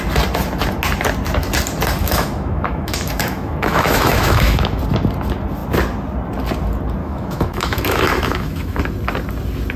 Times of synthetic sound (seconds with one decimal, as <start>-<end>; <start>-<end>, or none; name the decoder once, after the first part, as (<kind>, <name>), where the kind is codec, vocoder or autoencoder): 2.0-4.8 (autoencoder, DAC-VAE); 7.0-8.8